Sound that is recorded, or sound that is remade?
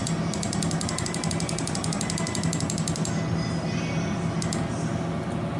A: recorded